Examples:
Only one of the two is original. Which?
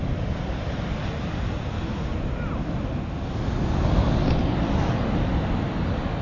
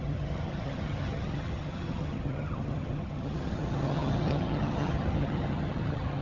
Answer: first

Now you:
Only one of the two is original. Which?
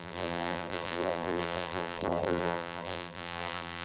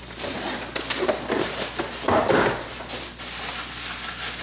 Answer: second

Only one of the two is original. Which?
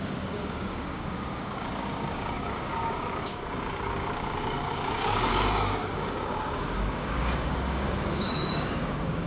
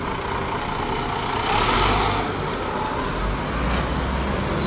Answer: second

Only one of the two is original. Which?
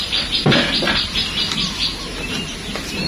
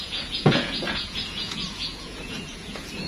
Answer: first